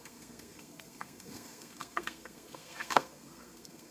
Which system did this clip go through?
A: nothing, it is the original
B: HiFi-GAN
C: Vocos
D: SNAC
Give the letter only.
D